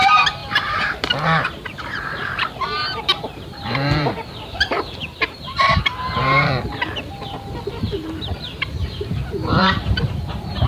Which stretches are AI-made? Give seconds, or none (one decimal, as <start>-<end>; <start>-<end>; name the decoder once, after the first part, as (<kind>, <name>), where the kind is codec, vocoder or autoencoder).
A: 0.0-10.7 (vocoder, BigVGAN v2)

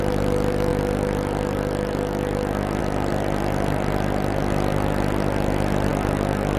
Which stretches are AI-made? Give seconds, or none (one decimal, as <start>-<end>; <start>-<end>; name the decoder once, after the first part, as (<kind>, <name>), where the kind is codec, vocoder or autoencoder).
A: none

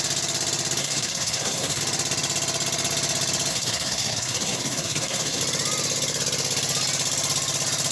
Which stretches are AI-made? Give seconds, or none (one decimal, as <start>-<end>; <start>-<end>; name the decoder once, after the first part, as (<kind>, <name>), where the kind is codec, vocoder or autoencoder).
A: 0.8-1.8 (codec, SNAC); 3.5-5.4

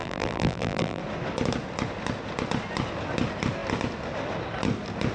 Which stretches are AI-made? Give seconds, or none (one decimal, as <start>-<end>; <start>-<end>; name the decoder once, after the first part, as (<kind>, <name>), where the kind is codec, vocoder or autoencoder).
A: 0.0-1.0 (vocoder, BigVGAN v2)

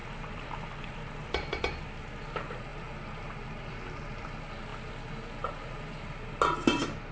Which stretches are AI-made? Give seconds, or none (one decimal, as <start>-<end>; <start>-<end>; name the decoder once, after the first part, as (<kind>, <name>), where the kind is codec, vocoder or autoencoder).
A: 0.0-1.6 (vocoder, BigVGAN v2)